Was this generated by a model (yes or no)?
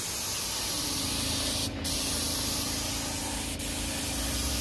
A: no